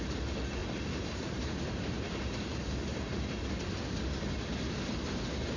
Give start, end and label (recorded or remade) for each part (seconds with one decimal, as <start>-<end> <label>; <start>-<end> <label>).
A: 0.0-0.6 recorded; 0.6-3.3 remade; 3.3-5.6 recorded